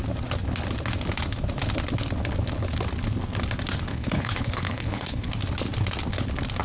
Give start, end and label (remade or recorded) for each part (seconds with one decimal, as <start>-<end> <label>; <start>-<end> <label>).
0.0-3.9 recorded; 3.9-5.3 remade; 5.3-6.6 recorded